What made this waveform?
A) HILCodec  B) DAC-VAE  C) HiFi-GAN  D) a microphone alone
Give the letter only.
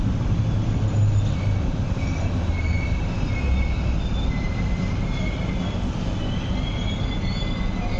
D